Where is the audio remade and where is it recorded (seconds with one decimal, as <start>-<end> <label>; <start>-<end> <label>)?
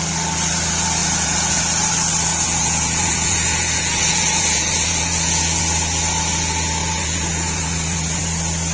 0.0-1.0 recorded; 1.0-1.6 remade; 1.6-2.3 recorded; 2.3-5.6 remade; 5.6-6.8 recorded; 6.8-8.2 remade; 8.2-8.7 recorded